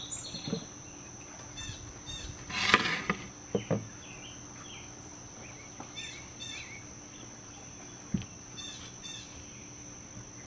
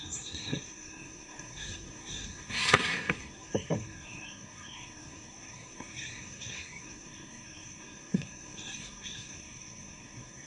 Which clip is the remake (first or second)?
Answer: second